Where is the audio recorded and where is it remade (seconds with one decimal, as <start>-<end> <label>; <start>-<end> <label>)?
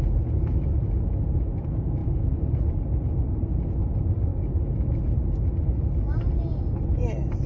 0.0-7.5 recorded